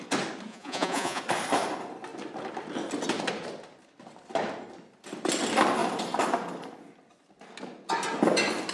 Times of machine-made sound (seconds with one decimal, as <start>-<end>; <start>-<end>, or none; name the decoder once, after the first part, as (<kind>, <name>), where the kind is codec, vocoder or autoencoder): 0.5-1.2 (vocoder, Vocos)